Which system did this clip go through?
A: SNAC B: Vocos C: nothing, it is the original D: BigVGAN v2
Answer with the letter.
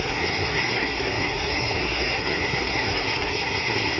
A